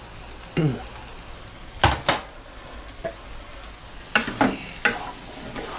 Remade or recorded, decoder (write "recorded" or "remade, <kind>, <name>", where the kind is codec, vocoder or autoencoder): recorded